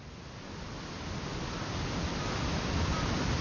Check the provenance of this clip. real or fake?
real